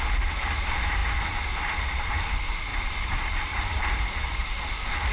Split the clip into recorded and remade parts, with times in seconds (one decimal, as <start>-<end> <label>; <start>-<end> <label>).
0.0-2.7 recorded; 2.7-4.6 remade; 4.6-5.1 recorded